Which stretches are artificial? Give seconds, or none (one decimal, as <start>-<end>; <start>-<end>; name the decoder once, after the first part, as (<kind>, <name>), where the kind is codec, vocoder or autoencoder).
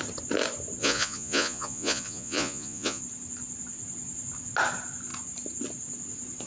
0.8-3.0 (vocoder, Vocos)